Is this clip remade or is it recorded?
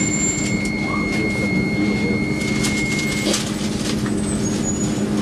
recorded